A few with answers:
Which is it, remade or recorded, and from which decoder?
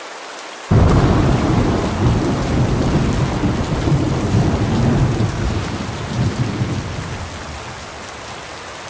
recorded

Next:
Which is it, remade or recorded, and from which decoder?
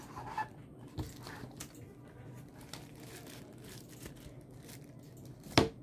recorded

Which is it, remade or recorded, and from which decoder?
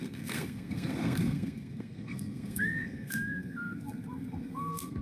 remade, codec, SNAC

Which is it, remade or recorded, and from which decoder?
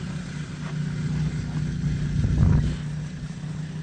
recorded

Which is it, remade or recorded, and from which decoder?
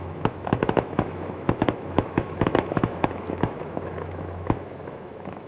remade, autoencoder, DAC-VAE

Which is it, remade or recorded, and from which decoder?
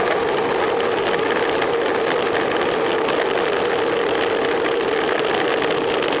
recorded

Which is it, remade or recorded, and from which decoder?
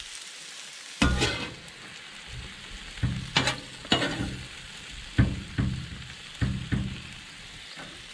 recorded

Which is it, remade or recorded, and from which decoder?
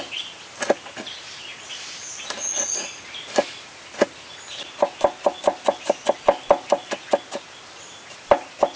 recorded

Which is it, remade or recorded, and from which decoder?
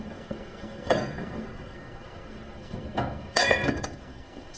remade, codec, SNAC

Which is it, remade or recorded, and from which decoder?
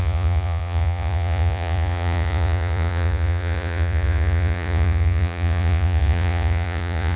remade, vocoder, Vocos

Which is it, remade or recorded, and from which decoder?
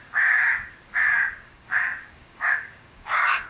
remade, codec, DAC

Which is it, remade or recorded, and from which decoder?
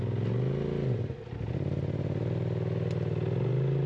recorded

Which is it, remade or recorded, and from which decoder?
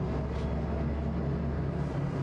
recorded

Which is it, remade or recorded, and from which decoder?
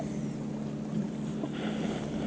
recorded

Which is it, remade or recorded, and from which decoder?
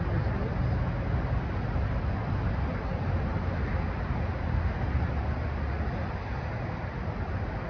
recorded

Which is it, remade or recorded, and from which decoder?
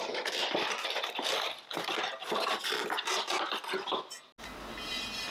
recorded